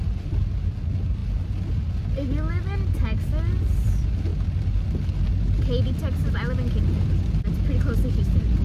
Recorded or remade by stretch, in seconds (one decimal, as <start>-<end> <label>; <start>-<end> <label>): 0.0-8.6 recorded

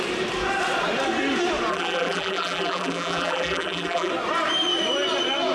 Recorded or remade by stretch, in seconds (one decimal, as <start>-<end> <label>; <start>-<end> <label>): 0.0-1.7 recorded; 1.7-4.1 remade; 4.1-5.5 recorded

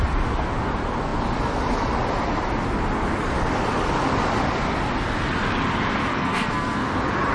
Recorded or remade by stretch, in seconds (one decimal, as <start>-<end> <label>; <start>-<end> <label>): 0.0-6.1 recorded; 6.1-6.8 remade; 6.8-7.3 recorded

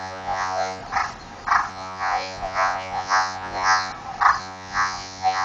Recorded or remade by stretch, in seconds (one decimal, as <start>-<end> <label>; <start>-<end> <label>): 0.0-0.8 remade; 0.8-1.7 recorded; 1.7-3.9 remade; 3.9-4.4 recorded; 4.4-5.4 remade